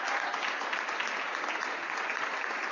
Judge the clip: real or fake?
real